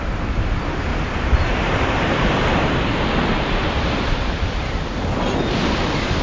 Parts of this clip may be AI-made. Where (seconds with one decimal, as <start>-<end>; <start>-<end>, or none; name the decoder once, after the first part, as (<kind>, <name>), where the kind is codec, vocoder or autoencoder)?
0.9-2.9 (vocoder, BigVGAN v2)